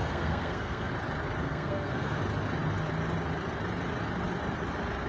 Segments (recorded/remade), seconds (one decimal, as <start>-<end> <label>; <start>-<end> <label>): 0.0-0.9 remade; 0.9-1.4 recorded; 1.4-2.2 remade; 2.2-5.1 recorded